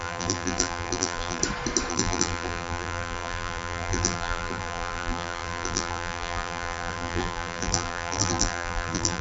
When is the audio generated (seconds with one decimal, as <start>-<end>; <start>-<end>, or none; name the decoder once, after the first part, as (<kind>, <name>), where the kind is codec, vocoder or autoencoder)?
0.0-1.4 (vocoder, BigVGAN v2); 1.9-9.2